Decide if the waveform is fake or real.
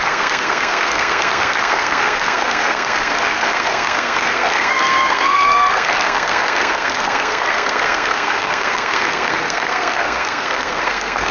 fake